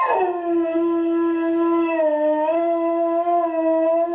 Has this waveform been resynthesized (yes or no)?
no